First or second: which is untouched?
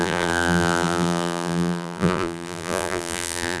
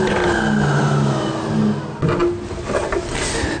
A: second